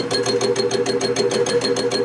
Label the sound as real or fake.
real